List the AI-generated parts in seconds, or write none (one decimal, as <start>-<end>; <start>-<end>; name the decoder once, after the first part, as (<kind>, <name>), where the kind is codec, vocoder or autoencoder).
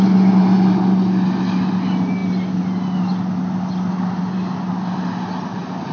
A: none